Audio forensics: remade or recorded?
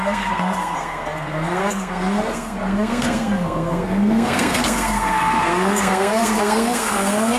remade